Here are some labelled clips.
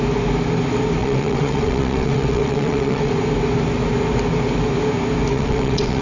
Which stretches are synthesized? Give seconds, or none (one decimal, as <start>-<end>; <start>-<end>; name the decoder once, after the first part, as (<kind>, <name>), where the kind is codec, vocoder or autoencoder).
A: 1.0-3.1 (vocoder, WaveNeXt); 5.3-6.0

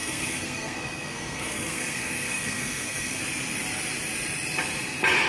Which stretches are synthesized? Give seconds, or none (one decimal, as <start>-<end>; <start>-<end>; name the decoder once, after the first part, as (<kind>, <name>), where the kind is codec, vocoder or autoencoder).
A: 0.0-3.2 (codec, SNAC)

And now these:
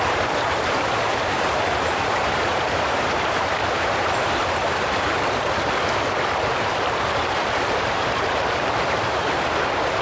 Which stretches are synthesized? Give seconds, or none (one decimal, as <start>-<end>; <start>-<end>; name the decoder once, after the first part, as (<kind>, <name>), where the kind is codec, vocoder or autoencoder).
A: 0.0-4.4 (vocoder, BigVGAN v2); 6.3-10.0

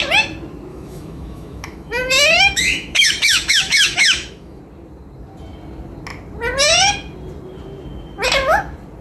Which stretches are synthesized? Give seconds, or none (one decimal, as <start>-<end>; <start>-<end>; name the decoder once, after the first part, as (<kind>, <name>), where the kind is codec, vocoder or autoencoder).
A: 0.7-4.6 (autoencoder, DAC-VAE)

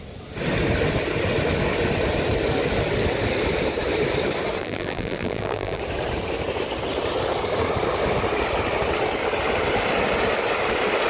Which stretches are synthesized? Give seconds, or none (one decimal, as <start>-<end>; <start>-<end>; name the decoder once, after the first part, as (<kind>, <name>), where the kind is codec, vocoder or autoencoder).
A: 4.6-5.8 (vocoder, BigVGAN v2)

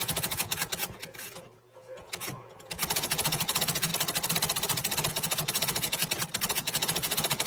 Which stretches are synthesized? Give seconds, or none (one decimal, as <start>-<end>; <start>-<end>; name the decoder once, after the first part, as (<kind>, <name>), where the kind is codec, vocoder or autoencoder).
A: 0.0-3.9 (vocoder, Vocos); 5.1-6.0; 6.5-7.5

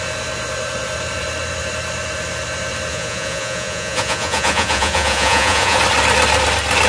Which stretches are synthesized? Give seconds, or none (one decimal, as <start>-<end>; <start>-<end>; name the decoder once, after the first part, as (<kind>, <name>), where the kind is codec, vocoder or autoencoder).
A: 2.9-5.8 (vocoder, Vocos)